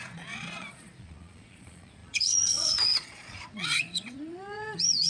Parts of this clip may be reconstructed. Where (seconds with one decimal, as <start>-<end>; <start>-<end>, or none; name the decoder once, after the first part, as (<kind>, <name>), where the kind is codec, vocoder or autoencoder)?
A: 0.0-5.1 (vocoder, Vocos)